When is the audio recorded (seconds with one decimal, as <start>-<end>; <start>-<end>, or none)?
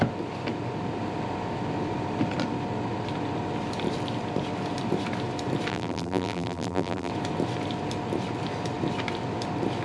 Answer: 0.0-5.7; 7.1-9.8